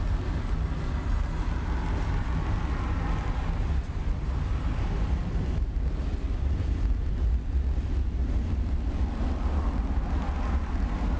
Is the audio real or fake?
real